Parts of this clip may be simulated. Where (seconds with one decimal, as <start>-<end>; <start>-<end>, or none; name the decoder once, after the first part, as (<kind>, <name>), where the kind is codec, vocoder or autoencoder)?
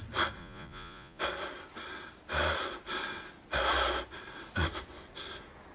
0.4-1.2 (vocoder, Vocos)